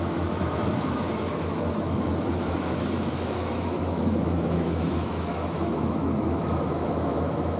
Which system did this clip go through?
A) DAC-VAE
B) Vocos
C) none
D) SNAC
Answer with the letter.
A